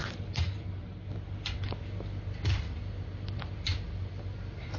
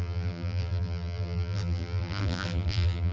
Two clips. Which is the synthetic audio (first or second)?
second